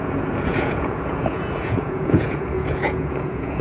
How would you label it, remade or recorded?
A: remade